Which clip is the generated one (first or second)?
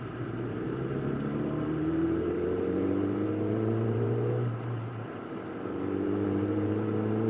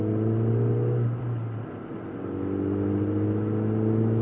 first